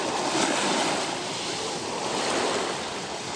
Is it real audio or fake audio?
fake